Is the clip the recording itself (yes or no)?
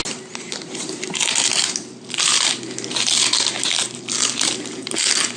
yes